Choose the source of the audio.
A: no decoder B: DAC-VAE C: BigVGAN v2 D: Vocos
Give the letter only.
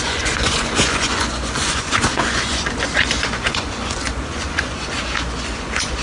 D